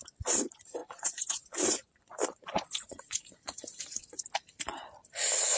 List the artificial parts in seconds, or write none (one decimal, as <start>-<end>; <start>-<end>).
0.8-4.2